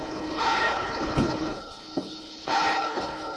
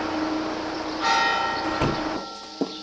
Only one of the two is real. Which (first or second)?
second